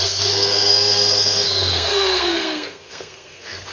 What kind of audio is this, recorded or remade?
remade